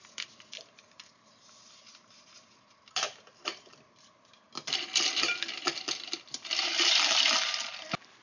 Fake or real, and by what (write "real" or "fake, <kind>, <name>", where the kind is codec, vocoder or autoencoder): fake, vocoder, BigVGAN v2